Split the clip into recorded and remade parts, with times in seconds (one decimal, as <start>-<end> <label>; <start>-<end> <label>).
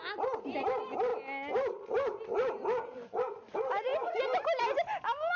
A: 0.0-5.4 recorded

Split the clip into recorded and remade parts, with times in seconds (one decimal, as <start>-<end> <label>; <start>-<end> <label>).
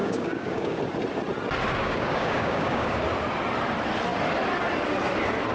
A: 0.0-0.8 remade; 0.8-1.8 recorded; 1.8-3.0 remade; 3.0-5.5 recorded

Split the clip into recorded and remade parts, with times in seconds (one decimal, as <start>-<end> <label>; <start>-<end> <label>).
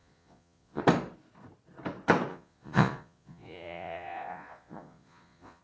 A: 0.0-0.8 remade; 0.8-2.3 recorded; 2.3-5.6 remade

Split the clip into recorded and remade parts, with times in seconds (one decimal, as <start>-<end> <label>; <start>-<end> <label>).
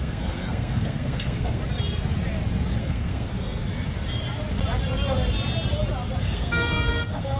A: 0.0-1.6 remade; 1.6-2.8 recorded; 2.8-3.6 remade; 3.6-6.2 recorded; 6.2-7.4 remade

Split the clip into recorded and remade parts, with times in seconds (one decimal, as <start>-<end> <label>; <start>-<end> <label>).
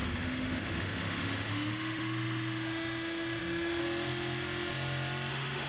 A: 0.0-3.8 remade; 3.8-5.3 recorded; 5.3-5.7 remade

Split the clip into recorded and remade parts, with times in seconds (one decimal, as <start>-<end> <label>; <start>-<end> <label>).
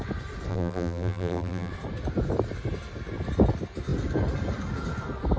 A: 0.0-0.5 recorded; 0.5-1.7 remade; 1.7-5.4 recorded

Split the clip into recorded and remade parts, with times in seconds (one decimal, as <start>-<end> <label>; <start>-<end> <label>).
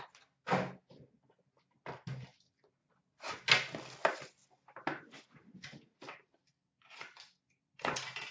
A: 0.0-8.3 recorded